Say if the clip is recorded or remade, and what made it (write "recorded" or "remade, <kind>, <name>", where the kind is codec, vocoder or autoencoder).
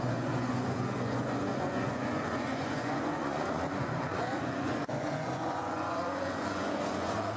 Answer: remade, vocoder, Vocos